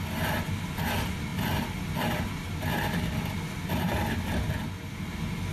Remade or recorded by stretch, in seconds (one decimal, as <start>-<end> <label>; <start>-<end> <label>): 0.0-5.5 recorded